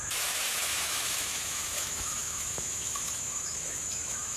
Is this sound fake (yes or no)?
yes